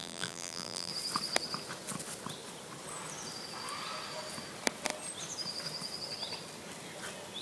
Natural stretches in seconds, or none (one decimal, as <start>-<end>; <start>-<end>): 0.9-7.4